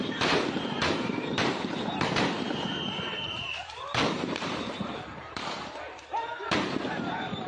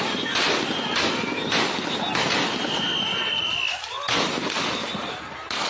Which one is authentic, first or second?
second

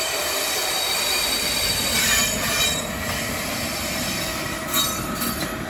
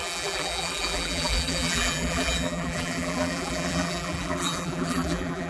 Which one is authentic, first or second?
first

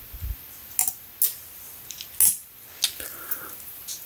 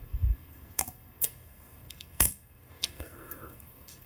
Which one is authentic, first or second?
first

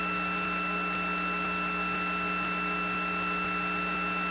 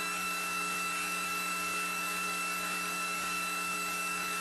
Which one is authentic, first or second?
first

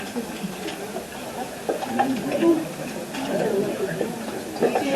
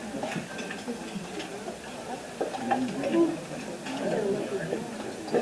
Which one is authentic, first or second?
second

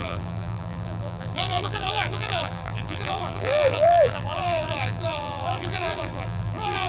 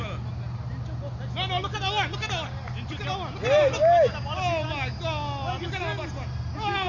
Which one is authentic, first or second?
second